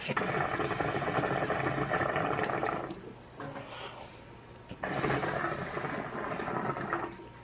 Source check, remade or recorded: recorded